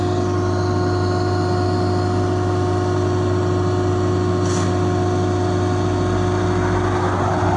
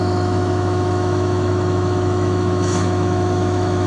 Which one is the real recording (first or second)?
first